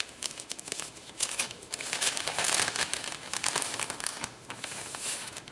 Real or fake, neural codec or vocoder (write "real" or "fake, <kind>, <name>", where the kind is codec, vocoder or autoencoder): fake, autoencoder, DAC-VAE